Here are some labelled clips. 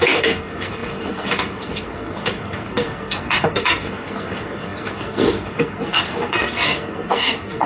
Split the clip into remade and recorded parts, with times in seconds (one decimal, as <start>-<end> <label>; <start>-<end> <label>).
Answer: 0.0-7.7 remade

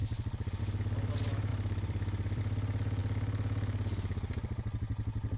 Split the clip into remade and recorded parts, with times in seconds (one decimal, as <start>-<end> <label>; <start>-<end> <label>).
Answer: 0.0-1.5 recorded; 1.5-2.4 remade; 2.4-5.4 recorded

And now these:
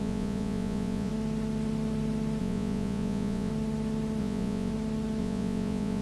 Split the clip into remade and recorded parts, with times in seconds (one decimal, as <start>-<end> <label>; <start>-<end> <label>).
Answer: 0.0-1.1 remade; 1.1-2.4 recorded; 2.4-3.5 remade; 3.5-4.2 recorded; 4.2-4.7 remade; 4.7-5.2 recorded; 5.2-6.0 remade